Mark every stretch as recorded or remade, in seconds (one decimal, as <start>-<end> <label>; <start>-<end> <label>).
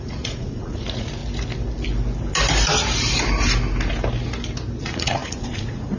0.0-1.2 remade; 1.2-4.8 recorded; 4.8-6.0 remade